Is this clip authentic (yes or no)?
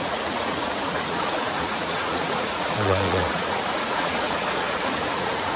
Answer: no